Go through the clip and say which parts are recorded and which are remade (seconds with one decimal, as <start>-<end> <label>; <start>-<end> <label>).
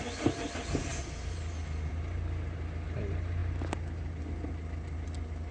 0.0-5.5 recorded